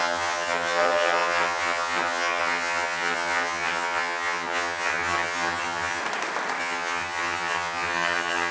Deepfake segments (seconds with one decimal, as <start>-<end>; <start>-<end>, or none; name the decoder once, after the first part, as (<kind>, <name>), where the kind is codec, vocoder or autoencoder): 0.0-6.0 (vocoder, HiFi-GAN); 6.6-8.5